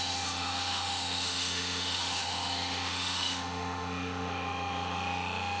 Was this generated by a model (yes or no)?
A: yes